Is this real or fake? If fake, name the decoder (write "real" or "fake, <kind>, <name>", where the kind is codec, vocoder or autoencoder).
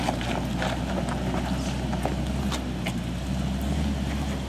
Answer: real